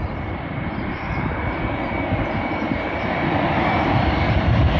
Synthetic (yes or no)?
yes